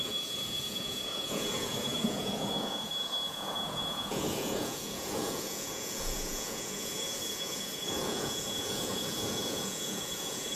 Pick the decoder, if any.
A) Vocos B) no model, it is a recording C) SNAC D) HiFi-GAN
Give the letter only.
A